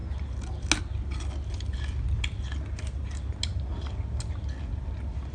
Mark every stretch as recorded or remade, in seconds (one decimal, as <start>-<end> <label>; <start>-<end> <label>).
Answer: 0.0-5.3 recorded